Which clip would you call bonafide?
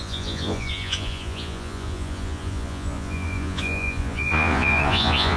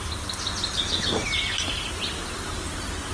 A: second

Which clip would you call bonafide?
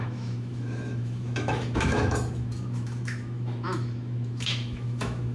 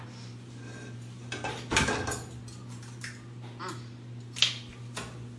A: second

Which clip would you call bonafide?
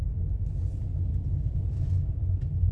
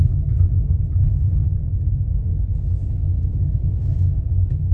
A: first